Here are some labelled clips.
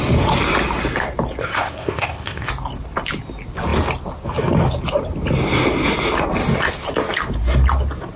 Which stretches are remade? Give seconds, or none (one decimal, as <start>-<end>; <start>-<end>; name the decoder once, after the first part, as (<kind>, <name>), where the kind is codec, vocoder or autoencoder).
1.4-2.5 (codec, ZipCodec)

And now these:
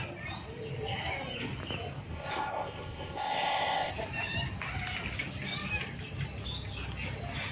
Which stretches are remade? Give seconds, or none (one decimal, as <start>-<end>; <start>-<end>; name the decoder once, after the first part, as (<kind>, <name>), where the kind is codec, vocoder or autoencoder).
2.1-3.9 (codec, ZipCodec)

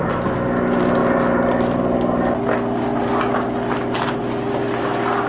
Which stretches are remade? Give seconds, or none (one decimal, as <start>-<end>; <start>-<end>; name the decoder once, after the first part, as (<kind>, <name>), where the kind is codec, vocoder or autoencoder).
none

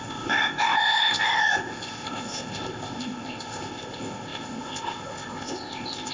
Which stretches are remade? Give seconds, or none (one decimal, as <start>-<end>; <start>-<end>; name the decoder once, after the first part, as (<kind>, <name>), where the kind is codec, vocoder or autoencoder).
0.0-6.1 (codec, ZipCodec)